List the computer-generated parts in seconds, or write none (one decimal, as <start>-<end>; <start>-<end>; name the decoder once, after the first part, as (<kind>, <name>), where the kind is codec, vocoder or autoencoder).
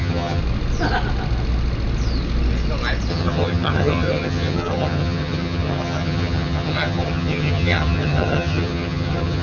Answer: 0.0-0.4 (vocoder, HiFi-GAN); 3.1-9.4